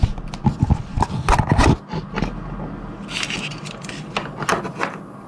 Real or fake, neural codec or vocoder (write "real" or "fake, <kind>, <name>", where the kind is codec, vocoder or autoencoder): real